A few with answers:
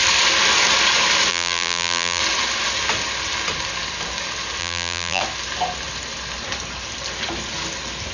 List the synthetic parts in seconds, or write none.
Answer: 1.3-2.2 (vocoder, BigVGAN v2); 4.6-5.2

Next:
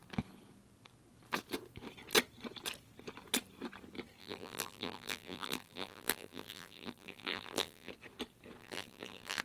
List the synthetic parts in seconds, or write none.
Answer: 4.2-7.9 (vocoder, BigVGAN v2); 8.6-9.4

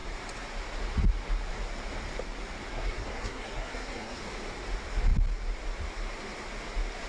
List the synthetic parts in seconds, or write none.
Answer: 2.7-4.2 (codec, SNAC)

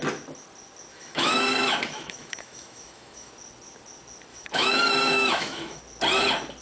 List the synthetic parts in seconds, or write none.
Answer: 0.9-3.3 (autoencoder, DAC-VAE); 4.3-5.8

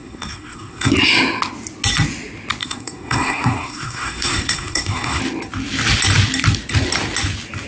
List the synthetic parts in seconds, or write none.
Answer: 0.0-0.9 (codec, SNAC); 2.6-5.2